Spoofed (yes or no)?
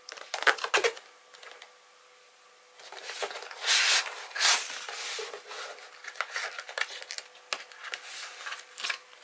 no